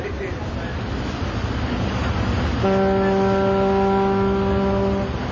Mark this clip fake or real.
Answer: real